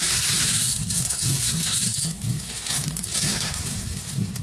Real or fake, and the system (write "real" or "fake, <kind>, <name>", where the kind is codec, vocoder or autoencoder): fake, codec, SNAC